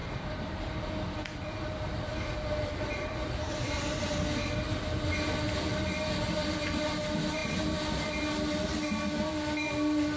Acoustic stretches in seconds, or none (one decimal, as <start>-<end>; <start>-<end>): 0.7-10.2